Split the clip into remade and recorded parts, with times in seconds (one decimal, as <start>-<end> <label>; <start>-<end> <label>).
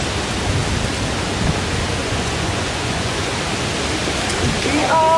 0.0-2.0 recorded; 2.0-3.3 remade; 3.3-5.2 recorded